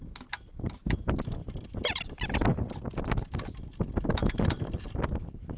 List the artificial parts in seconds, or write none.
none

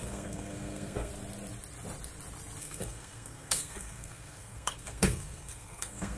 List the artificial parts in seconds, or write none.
0.0-1.1 (codec, SNAC); 2.6-6.2

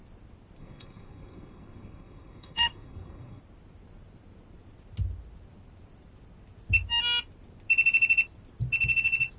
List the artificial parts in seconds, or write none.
0.6-3.4 (codec, SNAC)

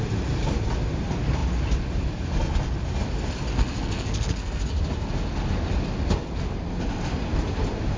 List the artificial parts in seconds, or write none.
3.5-4.6 (codec, SNAC)